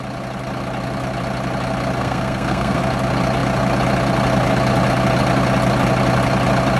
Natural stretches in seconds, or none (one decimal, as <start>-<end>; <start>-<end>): 0.0-2.0; 2.8-6.8